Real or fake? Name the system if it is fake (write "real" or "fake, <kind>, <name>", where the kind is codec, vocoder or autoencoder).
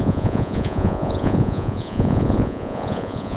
fake, vocoder, Vocos